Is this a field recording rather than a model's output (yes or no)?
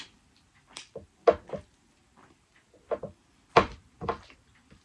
yes